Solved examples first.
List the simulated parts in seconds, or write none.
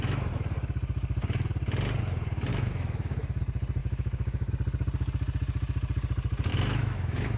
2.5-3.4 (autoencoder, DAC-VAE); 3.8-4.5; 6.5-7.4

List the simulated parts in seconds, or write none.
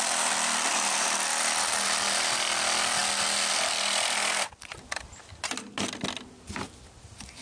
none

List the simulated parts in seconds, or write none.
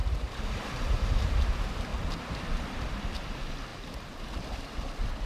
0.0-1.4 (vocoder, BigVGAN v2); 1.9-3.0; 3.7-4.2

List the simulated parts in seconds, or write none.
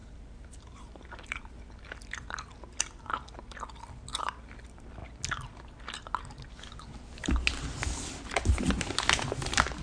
0.0-1.4 (vocoder, BigVGAN v2)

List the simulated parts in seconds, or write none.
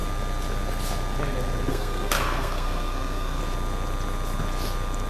1.7-3.4 (codec, SNAC)